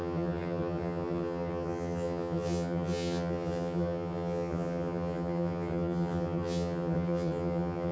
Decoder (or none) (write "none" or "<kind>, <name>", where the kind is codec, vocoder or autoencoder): vocoder, HiFi-GAN